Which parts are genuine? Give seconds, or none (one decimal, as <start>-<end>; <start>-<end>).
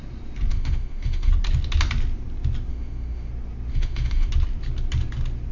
0.0-0.5; 1.3-2.7; 3.3-3.7; 4.3-5.5